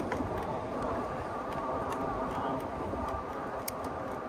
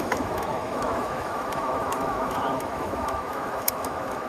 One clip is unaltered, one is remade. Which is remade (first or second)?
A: second